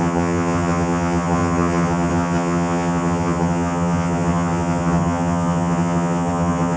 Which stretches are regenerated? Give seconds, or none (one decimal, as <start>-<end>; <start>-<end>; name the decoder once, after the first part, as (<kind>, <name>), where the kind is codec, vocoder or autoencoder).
0.0-6.8 (vocoder, HiFi-GAN)